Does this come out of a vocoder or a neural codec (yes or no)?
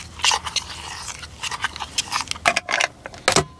no